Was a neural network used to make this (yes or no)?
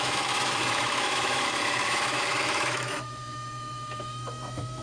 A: yes